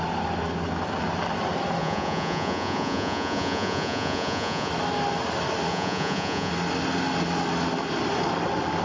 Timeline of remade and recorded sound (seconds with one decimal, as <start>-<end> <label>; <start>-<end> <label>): 0.0-1.8 recorded; 1.8-4.7 remade; 4.7-5.7 recorded; 5.7-6.5 remade; 6.5-8.8 recorded